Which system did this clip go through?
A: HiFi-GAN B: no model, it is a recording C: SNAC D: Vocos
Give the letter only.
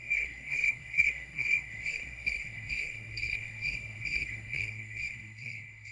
C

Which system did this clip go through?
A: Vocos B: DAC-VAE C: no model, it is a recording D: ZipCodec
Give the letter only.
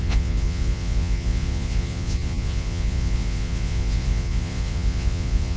A